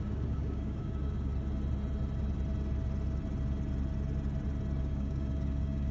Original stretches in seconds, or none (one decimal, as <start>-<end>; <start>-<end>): 1.3-4.8